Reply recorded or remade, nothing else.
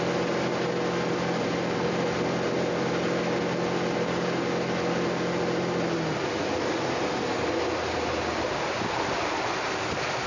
recorded